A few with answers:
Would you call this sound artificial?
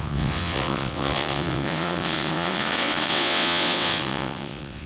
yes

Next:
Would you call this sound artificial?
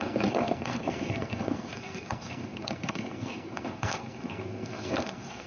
yes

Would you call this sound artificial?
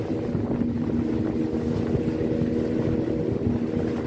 no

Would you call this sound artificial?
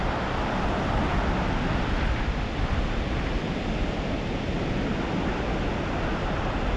no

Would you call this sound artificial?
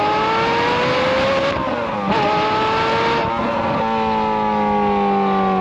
no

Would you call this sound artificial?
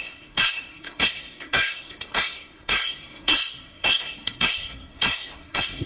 yes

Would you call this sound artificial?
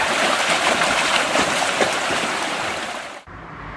yes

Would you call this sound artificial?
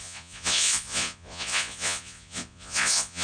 yes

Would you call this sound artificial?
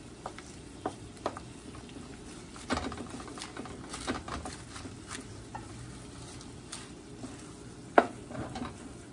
no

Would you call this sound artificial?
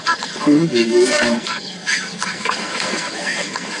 yes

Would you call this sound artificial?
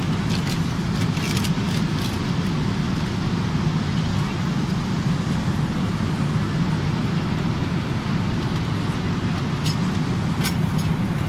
no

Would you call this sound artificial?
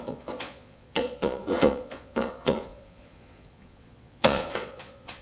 yes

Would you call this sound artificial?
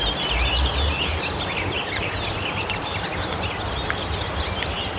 no